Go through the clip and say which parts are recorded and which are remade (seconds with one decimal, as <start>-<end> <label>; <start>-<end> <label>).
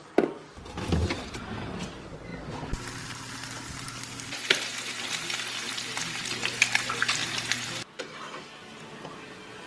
0.0-9.7 recorded